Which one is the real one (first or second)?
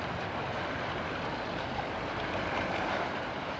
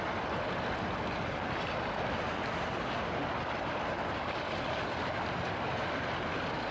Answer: second